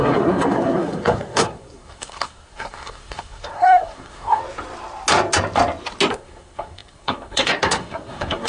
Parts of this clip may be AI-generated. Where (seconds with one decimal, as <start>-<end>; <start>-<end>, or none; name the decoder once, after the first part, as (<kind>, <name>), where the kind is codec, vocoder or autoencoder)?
0.0-4.4 (codec, SNAC); 6.1-8.5